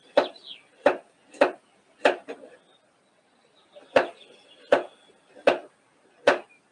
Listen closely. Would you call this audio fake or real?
real